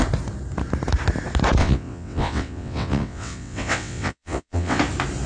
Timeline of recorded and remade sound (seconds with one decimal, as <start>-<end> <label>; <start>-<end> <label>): 0.0-1.6 recorded; 1.6-4.8 remade; 4.8-5.3 recorded